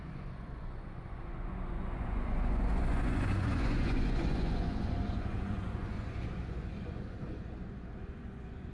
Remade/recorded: remade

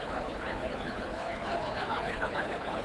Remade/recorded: remade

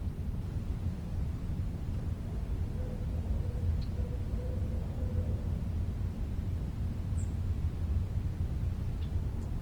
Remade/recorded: remade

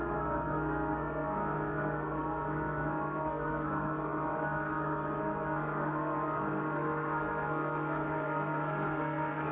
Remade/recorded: remade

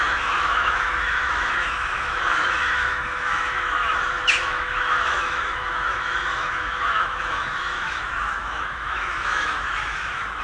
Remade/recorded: remade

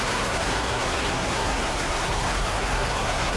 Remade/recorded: remade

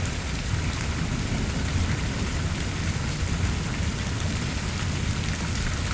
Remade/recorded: recorded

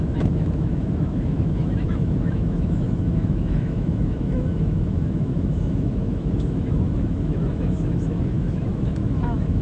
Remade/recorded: remade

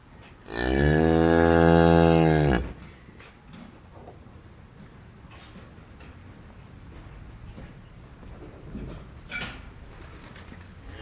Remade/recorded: recorded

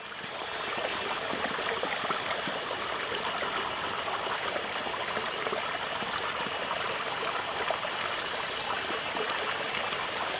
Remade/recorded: recorded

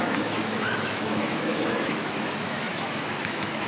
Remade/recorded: remade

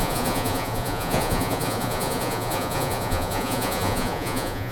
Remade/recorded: remade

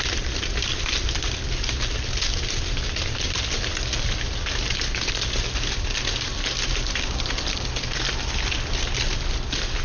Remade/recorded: recorded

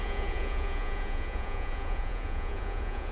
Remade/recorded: remade